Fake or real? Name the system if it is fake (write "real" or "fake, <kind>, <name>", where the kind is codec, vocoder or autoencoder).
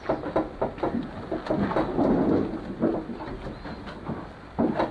real